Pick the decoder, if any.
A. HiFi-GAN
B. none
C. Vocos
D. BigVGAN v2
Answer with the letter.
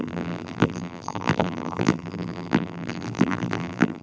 D